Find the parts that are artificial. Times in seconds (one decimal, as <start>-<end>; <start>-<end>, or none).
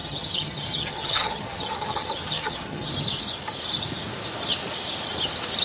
0.0-2.9